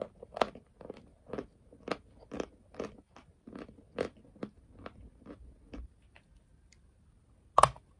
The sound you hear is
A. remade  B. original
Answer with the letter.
B